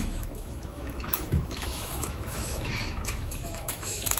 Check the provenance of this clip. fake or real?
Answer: fake